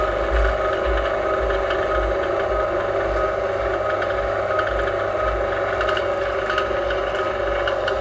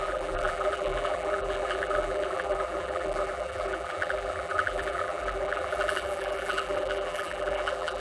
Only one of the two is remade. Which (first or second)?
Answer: second